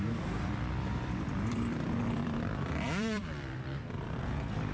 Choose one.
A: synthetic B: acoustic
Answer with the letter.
A